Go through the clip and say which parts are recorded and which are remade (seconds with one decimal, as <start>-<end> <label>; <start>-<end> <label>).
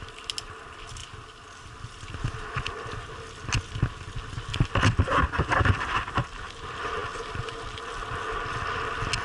0.0-9.2 recorded